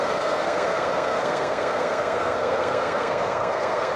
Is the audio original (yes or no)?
no